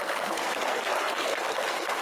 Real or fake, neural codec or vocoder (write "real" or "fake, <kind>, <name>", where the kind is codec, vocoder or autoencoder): fake, codec, SNAC